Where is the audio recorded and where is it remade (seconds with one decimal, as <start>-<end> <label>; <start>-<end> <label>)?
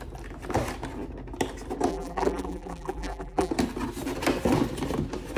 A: 0.0-1.9 recorded; 1.9-3.5 remade; 3.5-5.4 recorded